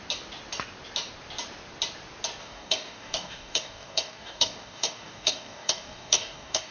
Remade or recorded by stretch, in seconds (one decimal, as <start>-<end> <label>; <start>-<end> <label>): 0.0-2.4 recorded; 2.4-6.7 remade

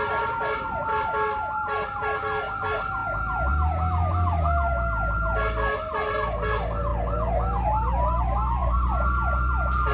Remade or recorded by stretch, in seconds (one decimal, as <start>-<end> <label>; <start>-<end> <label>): 0.0-8.6 recorded; 8.6-9.9 remade